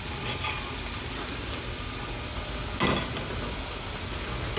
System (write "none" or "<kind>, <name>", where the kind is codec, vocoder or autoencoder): none